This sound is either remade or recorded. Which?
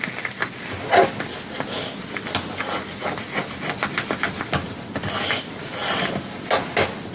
recorded